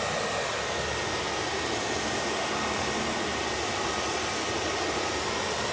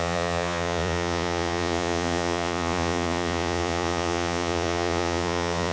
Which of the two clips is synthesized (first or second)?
second